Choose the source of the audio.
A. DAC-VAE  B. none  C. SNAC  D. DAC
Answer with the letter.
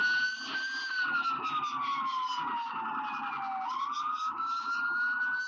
B